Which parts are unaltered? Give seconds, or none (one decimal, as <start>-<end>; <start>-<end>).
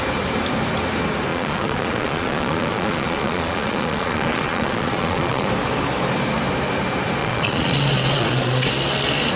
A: 0.0-1.3; 5.5-7.2; 8.7-9.4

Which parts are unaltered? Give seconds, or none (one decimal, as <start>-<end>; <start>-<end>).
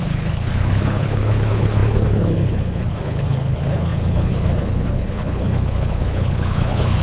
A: none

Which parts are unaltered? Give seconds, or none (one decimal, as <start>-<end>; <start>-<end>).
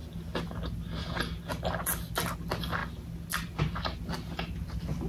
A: 0.0-5.1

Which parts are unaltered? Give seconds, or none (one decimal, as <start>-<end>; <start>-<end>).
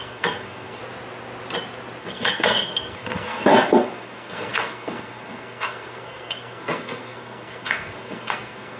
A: 0.8-2.0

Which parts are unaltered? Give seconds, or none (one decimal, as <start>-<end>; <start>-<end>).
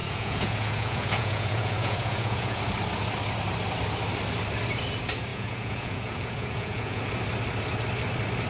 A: 2.6-5.3; 7.0-8.5